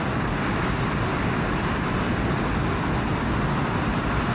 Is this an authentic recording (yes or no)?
yes